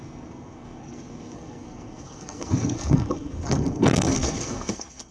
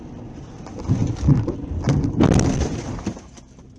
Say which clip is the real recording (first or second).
second